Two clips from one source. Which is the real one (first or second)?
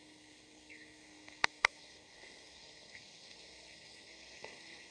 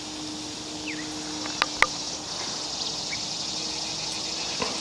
second